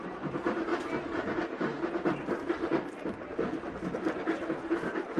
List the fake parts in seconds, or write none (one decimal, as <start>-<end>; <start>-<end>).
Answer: 0.0-0.7; 3.8-5.2